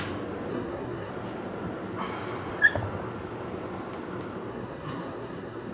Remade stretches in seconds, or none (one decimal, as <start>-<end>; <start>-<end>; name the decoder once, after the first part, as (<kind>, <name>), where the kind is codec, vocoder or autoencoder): 0.5-1.1 (codec, SNAC); 4.5-5.7